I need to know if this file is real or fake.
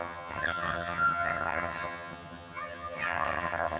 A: fake